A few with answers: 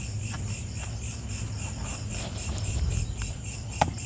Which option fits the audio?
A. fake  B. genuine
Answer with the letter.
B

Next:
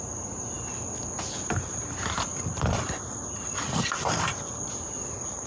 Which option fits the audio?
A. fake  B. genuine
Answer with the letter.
B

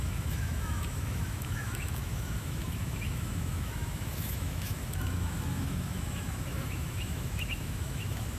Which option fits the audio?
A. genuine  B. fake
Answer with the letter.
B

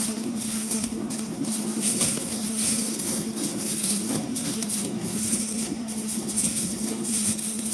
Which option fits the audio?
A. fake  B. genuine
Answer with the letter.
A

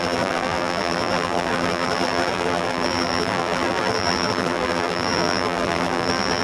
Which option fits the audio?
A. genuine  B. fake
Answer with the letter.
B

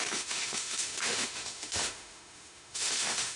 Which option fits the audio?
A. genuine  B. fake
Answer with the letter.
B